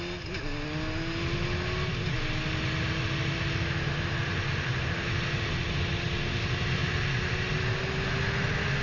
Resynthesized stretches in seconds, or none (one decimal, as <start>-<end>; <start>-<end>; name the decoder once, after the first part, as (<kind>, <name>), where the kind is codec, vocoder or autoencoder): none